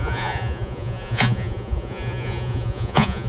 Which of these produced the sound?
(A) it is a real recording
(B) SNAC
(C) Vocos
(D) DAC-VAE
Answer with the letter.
C